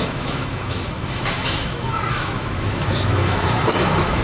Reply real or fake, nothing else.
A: fake